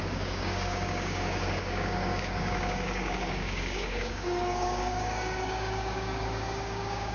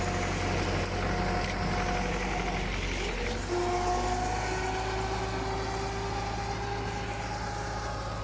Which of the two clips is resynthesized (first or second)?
first